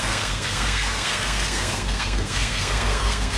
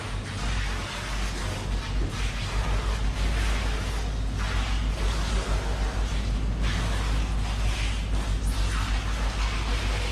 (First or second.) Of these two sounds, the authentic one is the second